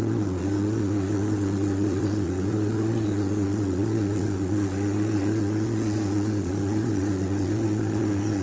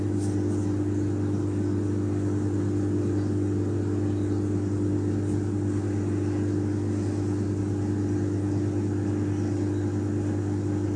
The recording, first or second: second